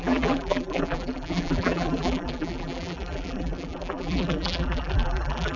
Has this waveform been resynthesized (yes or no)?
yes